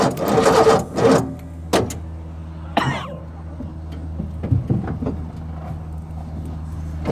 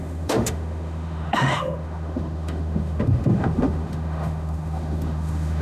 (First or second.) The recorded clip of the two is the first